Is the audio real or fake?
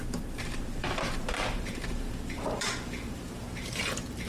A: fake